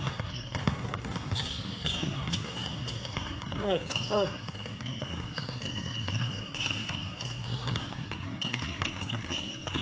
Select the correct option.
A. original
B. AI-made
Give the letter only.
B